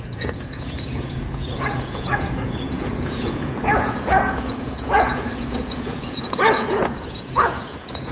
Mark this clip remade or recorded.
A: remade